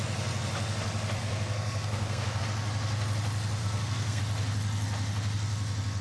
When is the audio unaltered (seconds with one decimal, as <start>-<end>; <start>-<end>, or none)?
0.0-1.2; 2.4-3.6; 4.2-6.0